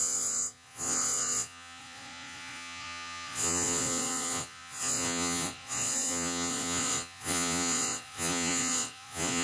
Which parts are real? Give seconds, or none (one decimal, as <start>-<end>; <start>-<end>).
none